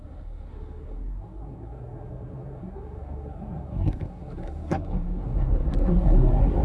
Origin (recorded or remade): remade